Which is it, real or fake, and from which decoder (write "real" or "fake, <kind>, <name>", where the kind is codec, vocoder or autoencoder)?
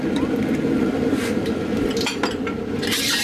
real